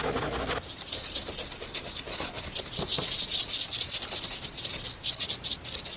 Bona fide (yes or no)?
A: yes